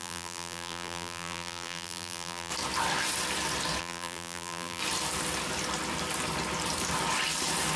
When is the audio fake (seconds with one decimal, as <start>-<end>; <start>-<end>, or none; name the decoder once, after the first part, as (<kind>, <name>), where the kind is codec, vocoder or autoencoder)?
0.0-2.5 (vocoder, BigVGAN v2); 3.8-4.8